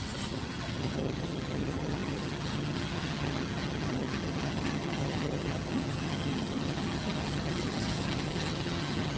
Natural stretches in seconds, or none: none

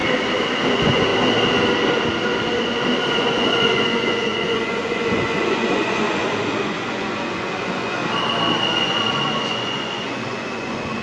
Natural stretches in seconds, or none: 0.0-0.7; 1.1-3.1; 8.0-8.8

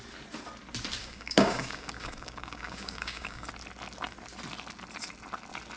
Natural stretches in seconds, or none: 0.0-1.0; 3.5-5.8

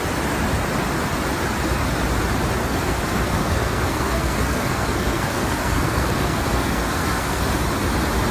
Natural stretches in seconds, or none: 0.0-2.6; 7.4-8.3

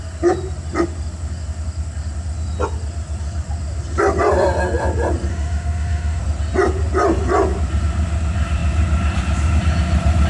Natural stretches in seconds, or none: 0.0-5.3; 6.2-10.3

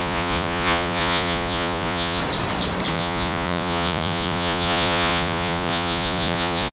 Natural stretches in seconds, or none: 2.2-2.9

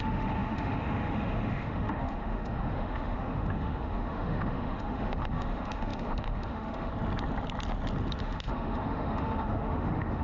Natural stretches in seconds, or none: 6.9-8.2